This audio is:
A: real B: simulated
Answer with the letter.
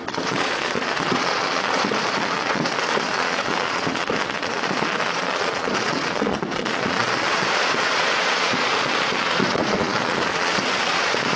B